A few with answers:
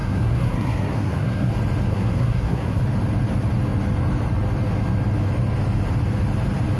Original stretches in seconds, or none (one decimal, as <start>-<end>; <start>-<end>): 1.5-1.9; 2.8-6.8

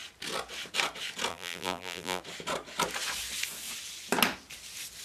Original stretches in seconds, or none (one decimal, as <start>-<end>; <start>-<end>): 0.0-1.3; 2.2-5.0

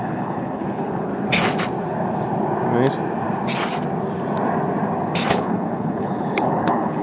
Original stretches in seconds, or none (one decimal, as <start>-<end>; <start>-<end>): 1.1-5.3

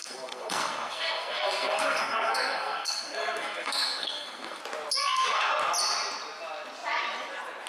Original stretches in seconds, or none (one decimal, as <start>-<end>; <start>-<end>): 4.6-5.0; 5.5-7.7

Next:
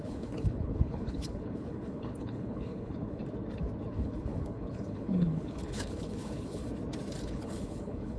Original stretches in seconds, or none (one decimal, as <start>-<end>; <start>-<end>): 3.2-3.9; 6.6-7.2